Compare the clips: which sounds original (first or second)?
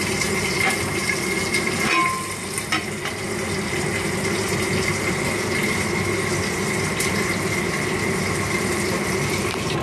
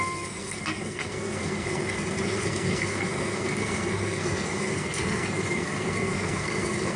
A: first